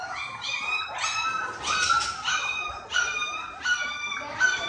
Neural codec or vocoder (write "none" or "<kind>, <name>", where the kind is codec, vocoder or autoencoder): none